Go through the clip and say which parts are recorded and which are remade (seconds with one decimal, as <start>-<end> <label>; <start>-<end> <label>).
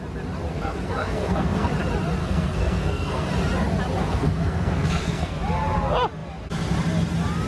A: 0.0-0.5 recorded; 0.5-1.7 remade; 1.7-2.2 recorded; 2.2-3.3 remade; 3.3-4.0 recorded; 4.0-5.4 remade; 5.4-7.5 recorded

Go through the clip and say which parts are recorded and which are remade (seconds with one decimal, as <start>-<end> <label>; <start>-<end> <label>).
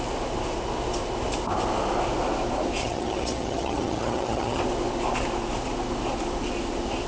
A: 0.0-2.8 recorded; 2.8-4.6 remade; 4.6-7.1 recorded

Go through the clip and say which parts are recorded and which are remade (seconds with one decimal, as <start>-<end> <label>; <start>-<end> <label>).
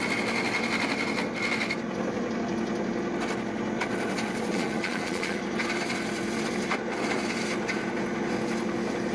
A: 0.0-4.5 recorded; 4.5-5.4 remade; 5.4-9.1 recorded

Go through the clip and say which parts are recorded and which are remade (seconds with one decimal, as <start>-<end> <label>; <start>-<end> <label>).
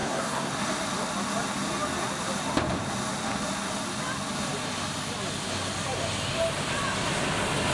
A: 0.0-0.5 remade; 0.5-7.7 recorded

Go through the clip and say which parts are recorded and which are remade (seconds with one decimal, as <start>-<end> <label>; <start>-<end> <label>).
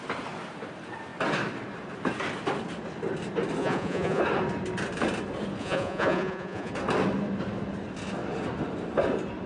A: 0.0-3.6 recorded; 3.6-4.2 remade; 4.2-5.6 recorded; 5.6-6.7 remade; 6.7-9.5 recorded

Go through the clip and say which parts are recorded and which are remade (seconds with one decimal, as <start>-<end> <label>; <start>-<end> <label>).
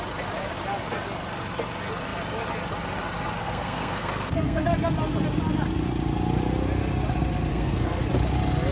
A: 0.0-3.4 recorded; 3.4-4.7 remade; 4.7-7.5 recorded; 7.5-8.0 remade; 8.0-8.7 recorded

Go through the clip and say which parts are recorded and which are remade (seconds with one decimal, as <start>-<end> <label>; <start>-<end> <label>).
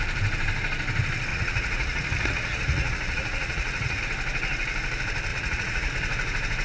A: 0.0-1.3 recorded; 1.3-4.0 remade; 4.0-5.3 recorded; 5.3-5.9 remade; 5.9-6.6 recorded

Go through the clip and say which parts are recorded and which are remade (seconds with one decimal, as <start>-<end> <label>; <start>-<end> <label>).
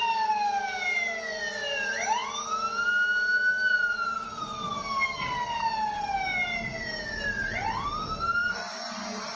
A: 0.0-8.4 recorded; 8.4-9.0 remade; 9.0-9.4 recorded